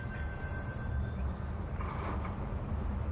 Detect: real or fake fake